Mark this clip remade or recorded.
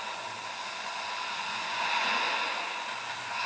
remade